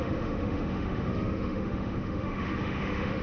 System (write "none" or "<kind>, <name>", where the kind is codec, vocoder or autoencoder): autoencoder, DAC-VAE